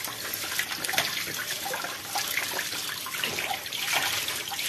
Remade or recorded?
recorded